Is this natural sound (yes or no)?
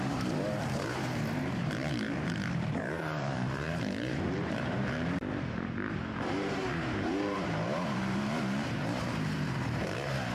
no